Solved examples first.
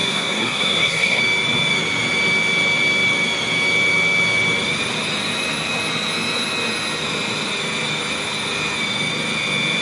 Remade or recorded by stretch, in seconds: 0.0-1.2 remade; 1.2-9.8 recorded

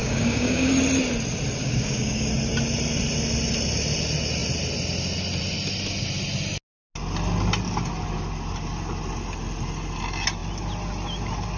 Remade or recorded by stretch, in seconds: 0.0-0.7 remade; 0.7-1.6 recorded; 1.6-2.3 remade; 2.3-11.6 recorded